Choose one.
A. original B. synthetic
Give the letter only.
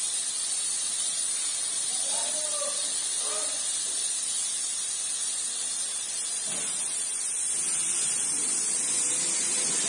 B